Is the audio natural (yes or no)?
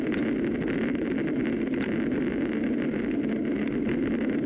yes